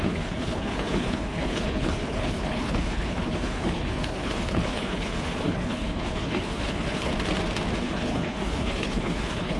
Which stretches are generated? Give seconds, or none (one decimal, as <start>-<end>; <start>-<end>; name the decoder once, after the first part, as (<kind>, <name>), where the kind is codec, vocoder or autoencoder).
0.0-7.1 (codec, HILCodec); 7.8-9.6